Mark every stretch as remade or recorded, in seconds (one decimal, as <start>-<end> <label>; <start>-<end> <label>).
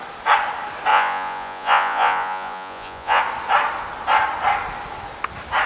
0.0-0.9 recorded; 0.9-3.2 remade; 3.2-5.7 recorded